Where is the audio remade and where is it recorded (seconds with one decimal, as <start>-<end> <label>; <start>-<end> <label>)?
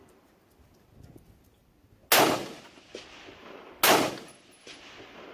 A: 0.0-5.3 recorded